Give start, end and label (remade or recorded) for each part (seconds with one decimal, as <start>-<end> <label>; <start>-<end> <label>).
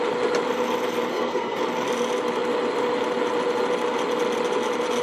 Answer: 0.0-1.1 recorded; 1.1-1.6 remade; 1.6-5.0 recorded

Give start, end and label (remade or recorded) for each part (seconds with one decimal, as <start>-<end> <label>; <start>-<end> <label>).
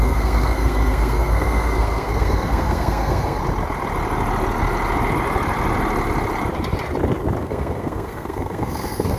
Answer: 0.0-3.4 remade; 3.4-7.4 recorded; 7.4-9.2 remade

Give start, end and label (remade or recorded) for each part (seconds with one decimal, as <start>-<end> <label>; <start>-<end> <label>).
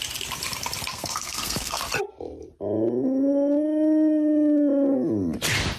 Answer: 0.0-0.9 recorded; 0.9-1.8 remade; 1.8-5.8 recorded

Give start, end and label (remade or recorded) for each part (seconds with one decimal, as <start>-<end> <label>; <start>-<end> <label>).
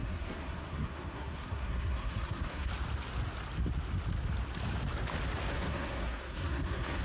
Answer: 0.0-2.7 remade; 2.7-5.5 recorded; 5.5-7.0 remade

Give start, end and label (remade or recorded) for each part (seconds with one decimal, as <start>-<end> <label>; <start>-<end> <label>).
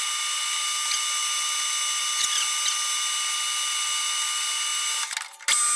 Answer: 0.0-5.8 recorded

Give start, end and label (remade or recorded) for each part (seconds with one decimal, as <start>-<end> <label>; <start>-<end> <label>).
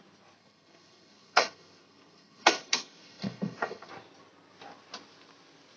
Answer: 0.0-0.4 recorded; 0.4-3.9 remade; 3.9-5.8 recorded